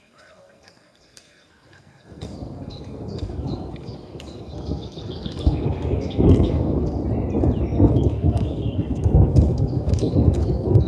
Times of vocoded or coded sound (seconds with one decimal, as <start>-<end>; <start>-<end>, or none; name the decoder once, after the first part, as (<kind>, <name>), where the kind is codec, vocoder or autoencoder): 0.0-7.0 (codec, SNAC); 7.6-10.9